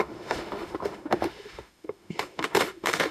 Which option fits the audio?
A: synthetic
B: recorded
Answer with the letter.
A